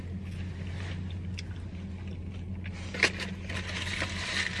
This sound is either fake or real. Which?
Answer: real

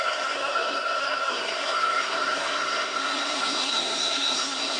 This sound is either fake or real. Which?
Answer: fake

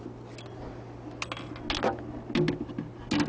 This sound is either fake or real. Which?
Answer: real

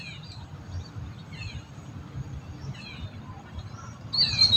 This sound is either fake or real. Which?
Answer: real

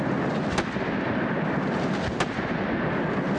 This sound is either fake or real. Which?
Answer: real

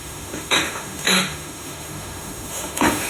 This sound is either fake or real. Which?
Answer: fake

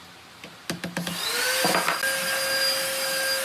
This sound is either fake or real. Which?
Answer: real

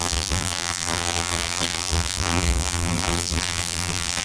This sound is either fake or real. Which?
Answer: fake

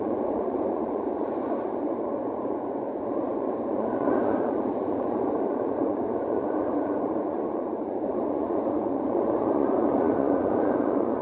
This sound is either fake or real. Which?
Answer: fake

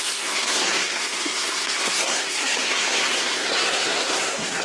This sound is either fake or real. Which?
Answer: fake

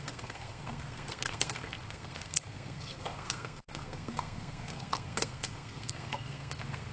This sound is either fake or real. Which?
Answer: fake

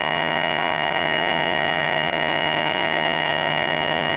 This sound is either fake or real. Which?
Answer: fake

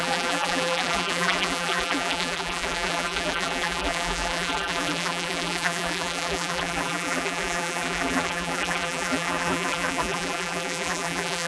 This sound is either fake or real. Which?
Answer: fake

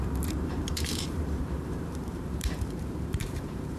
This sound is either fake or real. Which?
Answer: fake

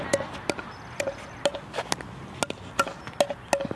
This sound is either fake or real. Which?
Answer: real